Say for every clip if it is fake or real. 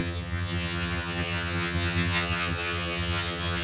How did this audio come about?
fake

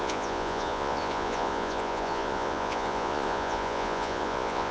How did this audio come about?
fake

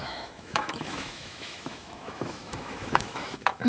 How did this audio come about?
fake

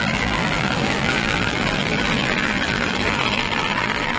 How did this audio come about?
fake